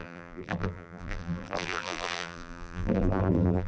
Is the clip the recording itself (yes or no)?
no